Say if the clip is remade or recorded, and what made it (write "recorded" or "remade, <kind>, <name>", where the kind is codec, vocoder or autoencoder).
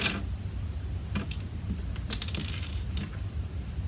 recorded